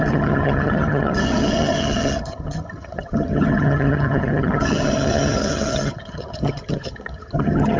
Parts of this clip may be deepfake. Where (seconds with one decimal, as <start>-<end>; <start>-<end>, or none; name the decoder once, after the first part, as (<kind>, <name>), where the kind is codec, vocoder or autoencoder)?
0.0-7.8 (vocoder, HiFi-GAN)